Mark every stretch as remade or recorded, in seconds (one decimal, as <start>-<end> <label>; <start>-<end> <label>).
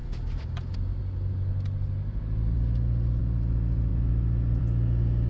0.0-3.2 remade; 3.2-3.9 recorded; 3.9-4.6 remade; 4.6-5.3 recorded